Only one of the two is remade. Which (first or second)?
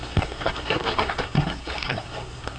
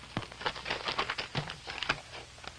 first